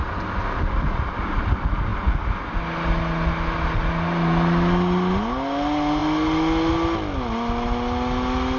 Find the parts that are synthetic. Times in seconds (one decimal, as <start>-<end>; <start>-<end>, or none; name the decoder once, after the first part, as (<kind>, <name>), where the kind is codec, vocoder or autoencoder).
none